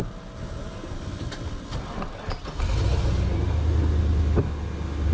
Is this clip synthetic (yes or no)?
no